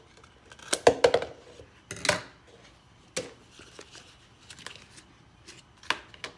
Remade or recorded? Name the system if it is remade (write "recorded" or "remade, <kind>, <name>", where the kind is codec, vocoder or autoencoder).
recorded